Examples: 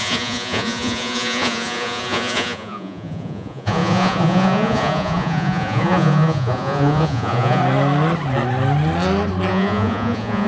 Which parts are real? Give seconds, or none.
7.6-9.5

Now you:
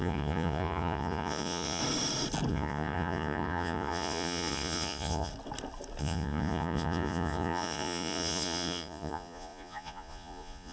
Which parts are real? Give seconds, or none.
1.8-2.5; 5.3-6.0

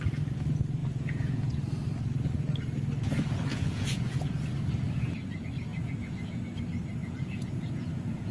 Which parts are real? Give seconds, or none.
0.0-0.8; 1.5-3.5; 4.3-5.7; 6.4-7.0

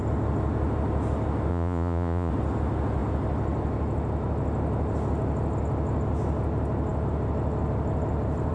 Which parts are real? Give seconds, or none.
0.0-1.5; 2.3-8.5

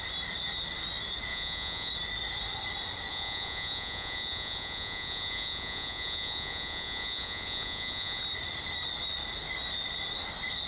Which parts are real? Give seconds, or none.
0.0-1.3; 1.9-3.1; 8.2-10.7

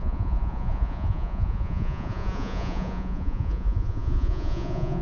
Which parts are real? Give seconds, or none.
none